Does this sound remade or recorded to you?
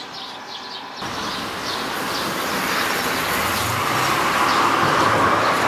recorded